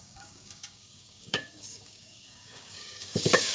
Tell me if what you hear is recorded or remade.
remade